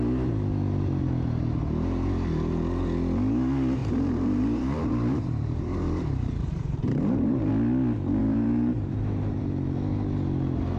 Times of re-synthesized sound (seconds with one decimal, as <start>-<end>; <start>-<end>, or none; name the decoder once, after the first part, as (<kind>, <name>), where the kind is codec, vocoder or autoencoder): 3.8-7.5 (vocoder, BigVGAN v2); 8.2-9.4